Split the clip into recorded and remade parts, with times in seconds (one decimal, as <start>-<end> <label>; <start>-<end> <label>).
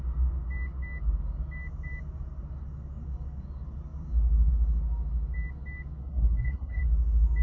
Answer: 0.0-6.0 recorded; 6.0-6.8 remade; 6.8-7.4 recorded